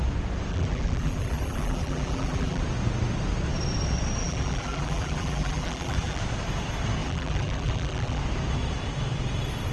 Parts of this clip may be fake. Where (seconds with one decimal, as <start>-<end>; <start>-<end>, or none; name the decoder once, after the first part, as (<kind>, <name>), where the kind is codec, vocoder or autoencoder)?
0.5-2.6 (vocoder, BigVGAN v2); 4.2-6.2; 7.0-8.2